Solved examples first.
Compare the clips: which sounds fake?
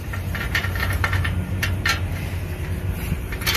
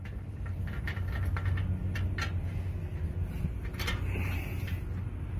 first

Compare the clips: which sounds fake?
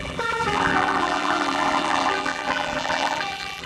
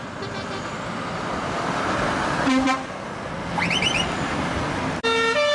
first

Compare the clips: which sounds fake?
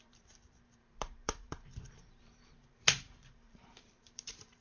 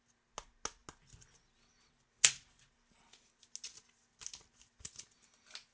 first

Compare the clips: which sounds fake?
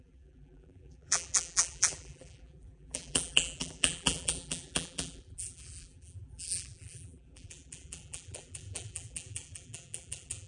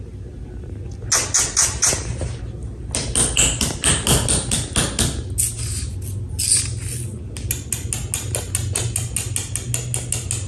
first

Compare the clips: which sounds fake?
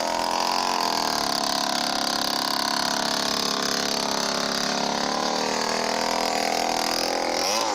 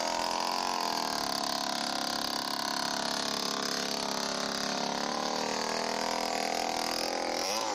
second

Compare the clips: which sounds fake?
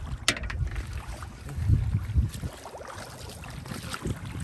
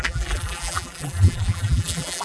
second